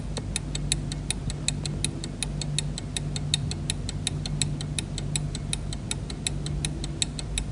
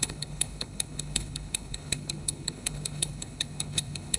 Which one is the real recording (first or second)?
first